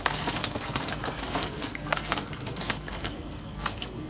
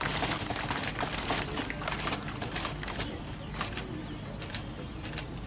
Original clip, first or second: second